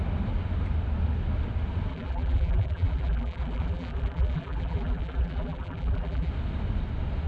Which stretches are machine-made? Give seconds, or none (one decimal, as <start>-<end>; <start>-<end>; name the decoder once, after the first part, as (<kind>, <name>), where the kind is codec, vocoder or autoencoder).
1.9-6.3 (vocoder, BigVGAN v2)